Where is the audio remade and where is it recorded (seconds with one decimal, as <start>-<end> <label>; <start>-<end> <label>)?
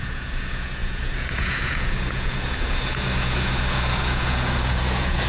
0.0-5.3 remade